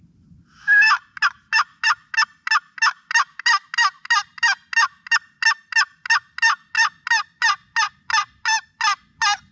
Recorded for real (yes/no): yes